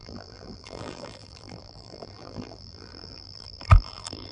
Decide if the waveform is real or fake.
fake